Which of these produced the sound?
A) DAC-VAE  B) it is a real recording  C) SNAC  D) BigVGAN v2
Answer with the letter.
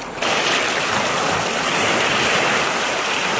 B